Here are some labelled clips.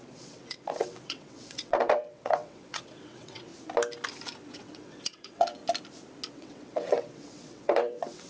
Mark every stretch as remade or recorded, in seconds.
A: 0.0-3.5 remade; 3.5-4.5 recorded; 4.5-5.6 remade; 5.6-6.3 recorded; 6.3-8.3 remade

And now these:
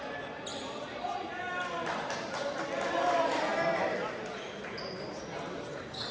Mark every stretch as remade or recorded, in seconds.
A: 0.0-0.5 recorded; 0.5-2.6 remade; 2.6-6.1 recorded

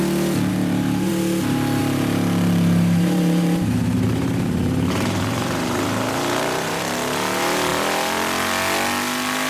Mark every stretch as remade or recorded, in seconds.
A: 0.0-0.5 recorded; 0.5-1.1 remade; 1.1-1.8 recorded; 1.8-6.8 remade; 6.8-9.5 recorded

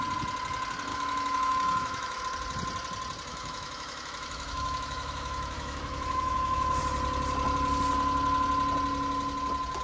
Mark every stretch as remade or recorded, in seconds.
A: 0.0-0.9 recorded; 0.9-2.2 remade; 2.2-3.3 recorded; 3.3-6.8 remade; 6.8-9.8 recorded

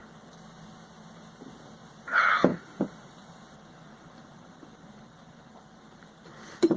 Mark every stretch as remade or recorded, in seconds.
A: 0.0-2.5 recorded; 2.5-6.8 remade

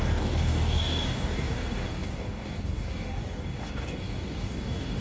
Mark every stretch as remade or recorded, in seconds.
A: 0.0-5.0 remade

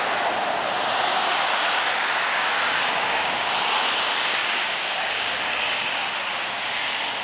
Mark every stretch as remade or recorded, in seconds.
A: 0.0-1.1 recorded; 1.1-3.9 remade; 3.9-4.4 recorded; 4.4-6.1 remade; 6.1-7.2 recorded

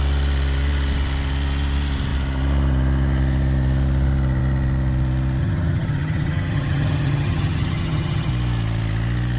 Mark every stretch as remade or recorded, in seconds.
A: 0.0-5.4 recorded; 5.4-8.3 remade; 8.3-9.4 recorded